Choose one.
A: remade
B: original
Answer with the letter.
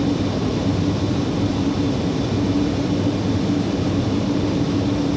B